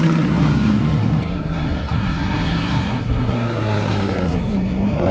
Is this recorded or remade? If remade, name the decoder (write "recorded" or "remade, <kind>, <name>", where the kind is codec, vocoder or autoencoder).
remade, codec, SNAC